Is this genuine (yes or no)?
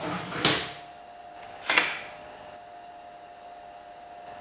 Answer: yes